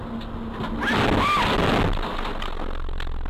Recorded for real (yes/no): yes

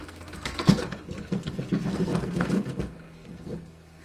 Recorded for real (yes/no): no